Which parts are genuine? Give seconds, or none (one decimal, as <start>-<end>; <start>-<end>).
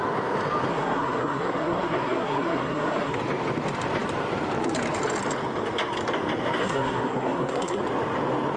0.0-0.7; 3.2-6.6; 7.8-8.6